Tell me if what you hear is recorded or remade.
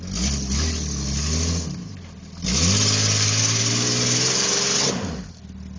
recorded